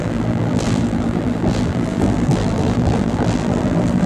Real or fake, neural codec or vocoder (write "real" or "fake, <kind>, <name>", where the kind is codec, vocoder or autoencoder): fake, vocoder, BigVGAN v2